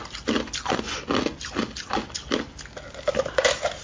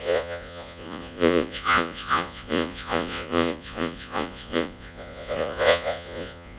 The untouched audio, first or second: first